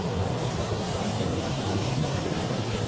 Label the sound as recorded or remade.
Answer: remade